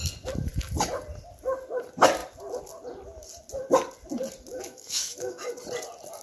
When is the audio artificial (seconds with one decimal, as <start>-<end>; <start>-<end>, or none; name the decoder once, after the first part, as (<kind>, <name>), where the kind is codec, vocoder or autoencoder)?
4.5-5.5 (autoencoder, DAC-VAE)